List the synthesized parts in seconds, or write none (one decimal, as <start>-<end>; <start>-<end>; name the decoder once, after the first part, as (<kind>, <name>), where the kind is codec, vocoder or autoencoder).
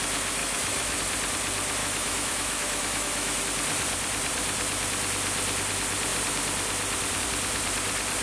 0.4-1.0 (autoencoder, DAC-VAE); 1.8-3.4